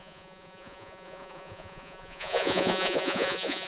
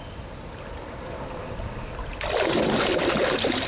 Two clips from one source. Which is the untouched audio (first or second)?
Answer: second